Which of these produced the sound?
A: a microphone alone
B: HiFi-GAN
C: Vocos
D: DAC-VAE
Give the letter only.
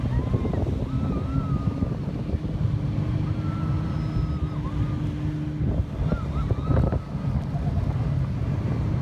A